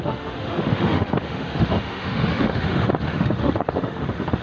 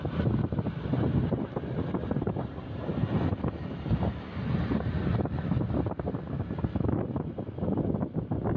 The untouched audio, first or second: second